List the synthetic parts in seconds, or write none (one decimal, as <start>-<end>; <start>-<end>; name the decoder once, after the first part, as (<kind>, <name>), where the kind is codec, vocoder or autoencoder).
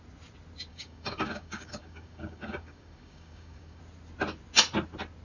0.7-3.8 (codec, DAC)